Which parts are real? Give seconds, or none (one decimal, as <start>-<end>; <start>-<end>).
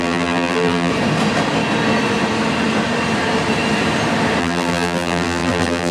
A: 0.9-4.4